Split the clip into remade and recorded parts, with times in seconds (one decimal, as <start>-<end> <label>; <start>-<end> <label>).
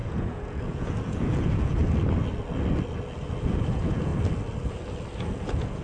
0.0-1.8 remade; 1.8-3.4 recorded; 3.4-4.1 remade; 4.1-5.2 recorded; 5.2-5.8 remade